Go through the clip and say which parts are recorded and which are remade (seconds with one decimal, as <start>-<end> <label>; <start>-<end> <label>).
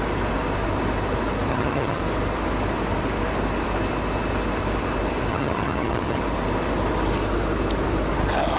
0.0-1.5 recorded; 1.5-2.0 remade; 2.0-5.3 recorded; 5.3-6.2 remade; 6.2-8.6 recorded